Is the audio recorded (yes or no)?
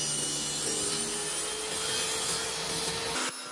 yes